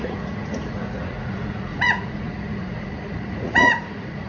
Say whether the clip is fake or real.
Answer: fake